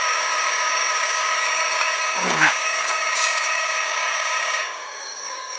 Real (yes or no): no